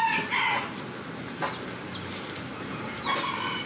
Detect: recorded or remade recorded